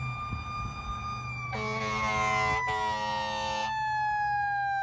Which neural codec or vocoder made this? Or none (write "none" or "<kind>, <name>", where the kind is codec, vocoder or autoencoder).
none